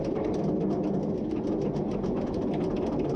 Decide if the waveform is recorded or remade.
recorded